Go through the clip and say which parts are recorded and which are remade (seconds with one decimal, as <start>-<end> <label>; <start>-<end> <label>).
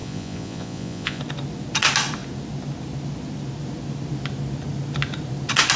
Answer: 0.0-1.2 remade; 1.2-5.8 recorded